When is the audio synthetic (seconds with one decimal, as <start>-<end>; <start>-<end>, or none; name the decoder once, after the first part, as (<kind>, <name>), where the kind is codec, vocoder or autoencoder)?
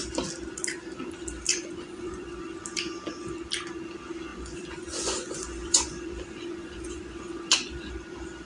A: 1.5-2.4 (vocoder, Vocos); 4.3-7.9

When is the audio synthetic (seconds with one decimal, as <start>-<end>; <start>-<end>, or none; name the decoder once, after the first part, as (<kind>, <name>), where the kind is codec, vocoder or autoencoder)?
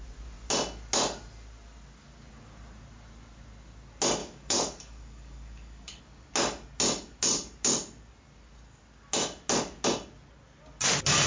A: 4.2-6.0 (codec, DAC)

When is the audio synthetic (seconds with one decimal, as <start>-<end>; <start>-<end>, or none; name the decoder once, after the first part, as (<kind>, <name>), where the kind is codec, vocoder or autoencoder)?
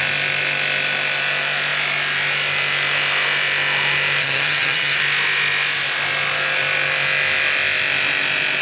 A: 4.2-5.0 (vocoder, HiFi-GAN)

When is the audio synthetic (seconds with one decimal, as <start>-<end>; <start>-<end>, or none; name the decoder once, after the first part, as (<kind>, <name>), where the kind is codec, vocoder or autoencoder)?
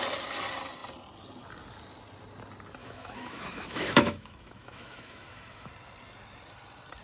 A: 2.8-5.7 (autoencoder, DAC-VAE)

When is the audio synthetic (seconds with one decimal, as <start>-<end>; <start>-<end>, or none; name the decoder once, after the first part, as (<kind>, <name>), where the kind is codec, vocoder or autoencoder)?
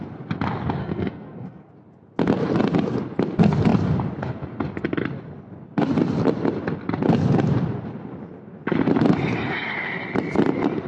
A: 0.8-1.7 (codec, SNAC)